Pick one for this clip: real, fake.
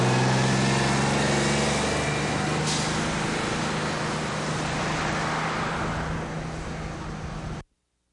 real